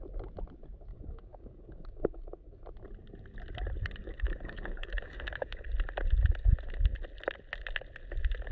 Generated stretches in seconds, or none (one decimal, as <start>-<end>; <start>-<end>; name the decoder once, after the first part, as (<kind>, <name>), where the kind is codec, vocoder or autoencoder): 0.9-2.6 (codec, DAC); 4.0-5.7